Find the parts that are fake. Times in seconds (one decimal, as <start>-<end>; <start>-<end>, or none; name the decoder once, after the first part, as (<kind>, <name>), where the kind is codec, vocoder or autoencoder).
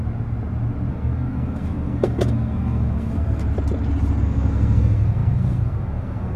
0.9-3.4 (codec, SNAC); 4.2-6.4